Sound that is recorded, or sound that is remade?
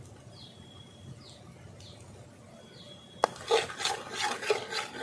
recorded